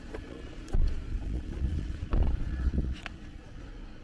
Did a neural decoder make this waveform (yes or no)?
yes